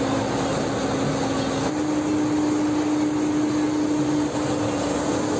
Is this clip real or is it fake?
real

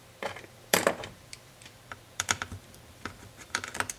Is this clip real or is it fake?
fake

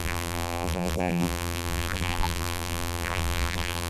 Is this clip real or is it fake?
fake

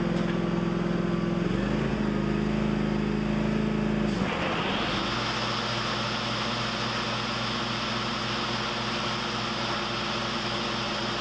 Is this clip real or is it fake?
real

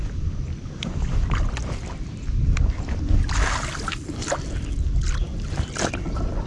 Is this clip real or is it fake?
real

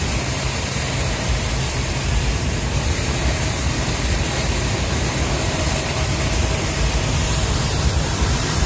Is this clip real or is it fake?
fake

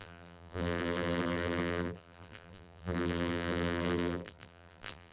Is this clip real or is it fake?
fake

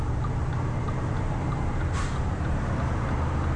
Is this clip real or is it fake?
fake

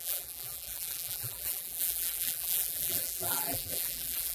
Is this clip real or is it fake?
fake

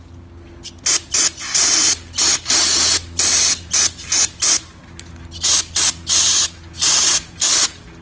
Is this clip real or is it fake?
real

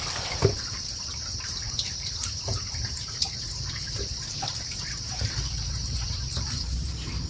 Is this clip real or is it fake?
fake